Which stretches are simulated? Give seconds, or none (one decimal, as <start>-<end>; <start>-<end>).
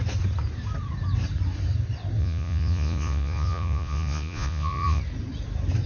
2.2-5.0